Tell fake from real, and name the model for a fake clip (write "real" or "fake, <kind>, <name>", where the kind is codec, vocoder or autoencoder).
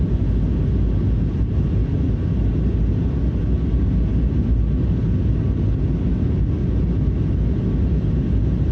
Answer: real